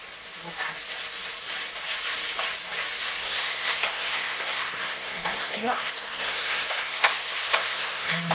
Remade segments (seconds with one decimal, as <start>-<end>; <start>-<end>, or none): 3.2-8.3